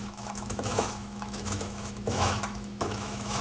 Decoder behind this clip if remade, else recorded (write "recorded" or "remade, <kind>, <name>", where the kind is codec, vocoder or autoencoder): remade, autoencoder, DAC-VAE